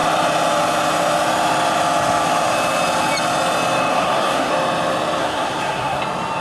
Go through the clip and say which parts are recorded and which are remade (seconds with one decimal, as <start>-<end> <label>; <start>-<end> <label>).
0.0-3.9 recorded; 3.9-4.5 remade; 4.5-5.2 recorded; 5.2-6.0 remade; 6.0-6.4 recorded